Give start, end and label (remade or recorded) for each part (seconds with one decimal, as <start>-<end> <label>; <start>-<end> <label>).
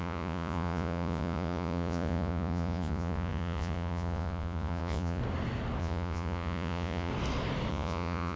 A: 0.0-5.2 remade; 5.2-5.8 recorded; 5.8-7.1 remade; 7.1-7.7 recorded; 7.7-8.4 remade